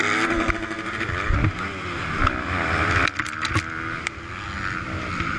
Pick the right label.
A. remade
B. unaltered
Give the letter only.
B